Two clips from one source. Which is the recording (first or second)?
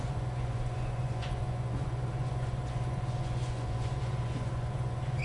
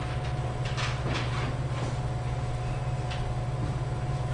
second